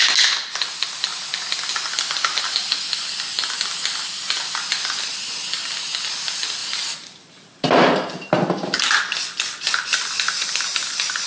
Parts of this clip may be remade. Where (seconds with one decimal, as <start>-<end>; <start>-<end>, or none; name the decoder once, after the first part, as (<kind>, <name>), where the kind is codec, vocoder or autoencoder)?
6.6-9.0 (vocoder, BigVGAN v2); 10.7-11.3